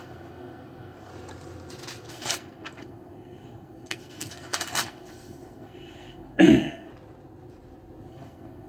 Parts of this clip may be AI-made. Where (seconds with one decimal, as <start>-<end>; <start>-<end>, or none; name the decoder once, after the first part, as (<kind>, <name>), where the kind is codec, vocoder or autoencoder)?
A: 0.0-1.1 (codec, SNAC); 2.1-6.9; 8.1-8.7